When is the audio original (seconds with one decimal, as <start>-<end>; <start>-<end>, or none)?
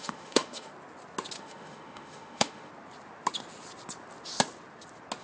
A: 0.7-1.4; 2.7-5.2